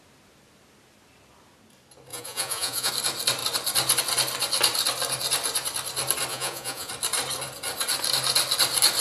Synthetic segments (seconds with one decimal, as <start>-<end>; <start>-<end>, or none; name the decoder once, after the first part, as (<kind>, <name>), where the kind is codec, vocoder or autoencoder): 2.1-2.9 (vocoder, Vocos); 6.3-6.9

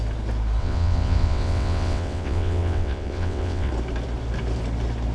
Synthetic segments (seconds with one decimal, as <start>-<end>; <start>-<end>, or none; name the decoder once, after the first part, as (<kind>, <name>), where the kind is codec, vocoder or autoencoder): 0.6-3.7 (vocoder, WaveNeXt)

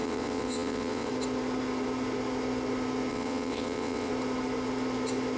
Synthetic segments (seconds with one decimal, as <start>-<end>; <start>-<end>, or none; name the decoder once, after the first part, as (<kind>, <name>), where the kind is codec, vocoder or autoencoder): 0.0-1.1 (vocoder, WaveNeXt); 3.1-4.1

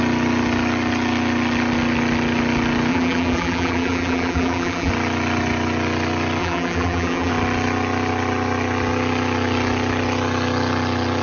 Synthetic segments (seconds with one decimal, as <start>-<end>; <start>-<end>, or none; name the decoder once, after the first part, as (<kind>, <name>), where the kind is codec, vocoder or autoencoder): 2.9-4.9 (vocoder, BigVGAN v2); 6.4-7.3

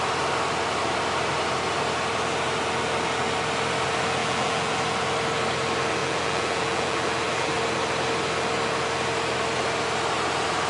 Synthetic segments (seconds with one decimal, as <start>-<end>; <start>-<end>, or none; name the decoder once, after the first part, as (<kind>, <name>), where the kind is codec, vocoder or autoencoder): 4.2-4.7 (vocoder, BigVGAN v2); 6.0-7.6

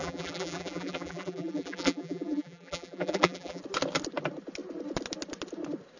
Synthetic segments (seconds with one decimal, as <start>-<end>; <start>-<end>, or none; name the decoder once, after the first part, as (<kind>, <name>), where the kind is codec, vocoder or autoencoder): 0.0-3.6 (vocoder, BigVGAN v2)

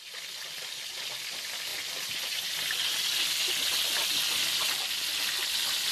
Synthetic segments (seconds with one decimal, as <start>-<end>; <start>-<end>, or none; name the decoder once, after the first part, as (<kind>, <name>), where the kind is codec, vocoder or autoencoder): none